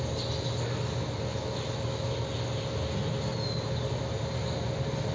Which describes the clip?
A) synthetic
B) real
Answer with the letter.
B